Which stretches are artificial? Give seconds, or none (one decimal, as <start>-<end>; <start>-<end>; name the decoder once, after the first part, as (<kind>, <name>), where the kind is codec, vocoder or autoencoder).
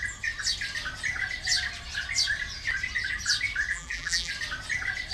3.7-4.3 (vocoder, BigVGAN v2)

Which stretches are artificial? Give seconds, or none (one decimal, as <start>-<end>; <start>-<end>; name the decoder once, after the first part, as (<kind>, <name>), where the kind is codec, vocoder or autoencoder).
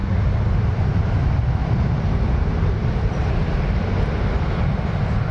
1.6-3.6 (vocoder, BigVGAN v2)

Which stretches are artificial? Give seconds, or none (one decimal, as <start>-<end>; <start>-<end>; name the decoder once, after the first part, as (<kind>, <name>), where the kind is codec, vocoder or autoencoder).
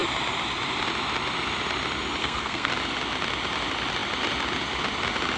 2.2-2.7 (codec, SNAC)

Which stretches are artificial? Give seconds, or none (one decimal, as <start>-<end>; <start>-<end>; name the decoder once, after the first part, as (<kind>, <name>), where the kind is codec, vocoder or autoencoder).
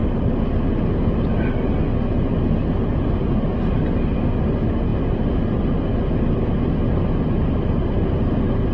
none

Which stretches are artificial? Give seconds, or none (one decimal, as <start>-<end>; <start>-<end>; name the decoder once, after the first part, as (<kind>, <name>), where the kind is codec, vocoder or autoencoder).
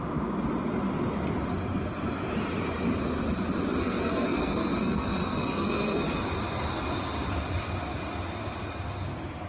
3.8-6.2 (codec, SNAC)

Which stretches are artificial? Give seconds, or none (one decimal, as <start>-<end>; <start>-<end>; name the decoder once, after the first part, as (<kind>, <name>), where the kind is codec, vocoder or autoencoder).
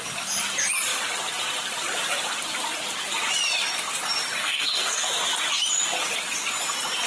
4.4-5.1 (codec, SNAC)